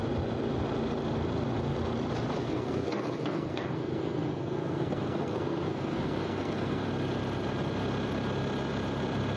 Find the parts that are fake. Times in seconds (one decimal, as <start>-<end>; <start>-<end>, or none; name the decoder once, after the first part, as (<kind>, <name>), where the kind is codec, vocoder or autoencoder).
2.4-6.9 (codec, SNAC)